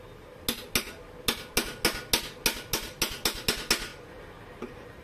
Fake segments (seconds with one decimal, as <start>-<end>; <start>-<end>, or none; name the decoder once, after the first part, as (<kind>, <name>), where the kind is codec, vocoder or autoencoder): none